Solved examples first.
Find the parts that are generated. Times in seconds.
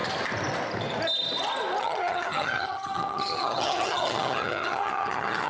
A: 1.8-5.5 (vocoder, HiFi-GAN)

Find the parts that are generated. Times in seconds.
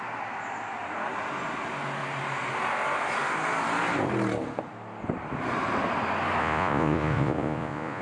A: 6.4-8.0 (vocoder, Vocos)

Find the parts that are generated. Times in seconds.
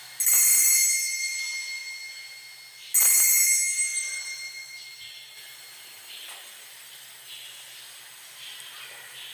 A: 3.9-7.4 (vocoder, BigVGAN v2)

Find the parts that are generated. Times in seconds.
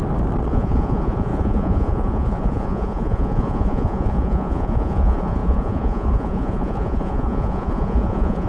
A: 0.5-8.5 (vocoder, Vocos)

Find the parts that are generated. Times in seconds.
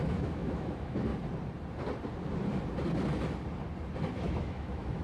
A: 0.0-1.1 (autoencoder, DAC-VAE); 4.1-5.0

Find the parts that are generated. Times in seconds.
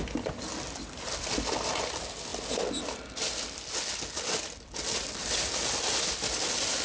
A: none